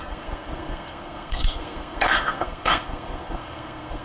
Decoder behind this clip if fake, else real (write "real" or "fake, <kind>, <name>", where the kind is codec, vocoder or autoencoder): fake, codec, SNAC